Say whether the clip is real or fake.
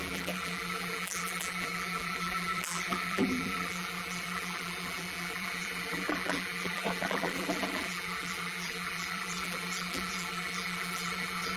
fake